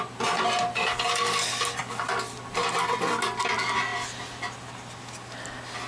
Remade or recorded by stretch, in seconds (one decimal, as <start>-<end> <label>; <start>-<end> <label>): 0.0-5.9 recorded